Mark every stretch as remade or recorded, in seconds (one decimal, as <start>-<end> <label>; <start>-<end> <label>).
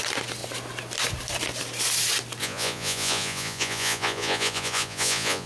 0.0-2.4 recorded; 2.4-5.5 remade